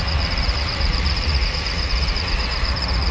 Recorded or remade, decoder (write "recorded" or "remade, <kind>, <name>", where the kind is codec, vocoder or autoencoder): remade, vocoder, Vocos